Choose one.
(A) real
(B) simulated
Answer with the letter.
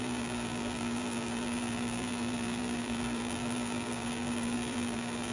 B